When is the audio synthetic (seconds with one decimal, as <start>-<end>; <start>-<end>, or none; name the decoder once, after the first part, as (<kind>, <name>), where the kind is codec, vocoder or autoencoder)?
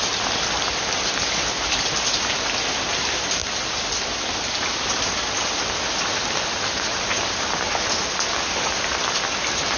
0.0-1.3 (vocoder, BigVGAN v2)